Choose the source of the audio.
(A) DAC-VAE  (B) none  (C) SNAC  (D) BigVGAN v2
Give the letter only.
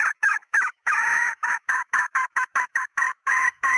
A